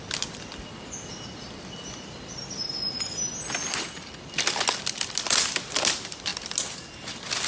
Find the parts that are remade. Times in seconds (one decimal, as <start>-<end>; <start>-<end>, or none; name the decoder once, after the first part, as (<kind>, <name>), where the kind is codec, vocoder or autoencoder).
none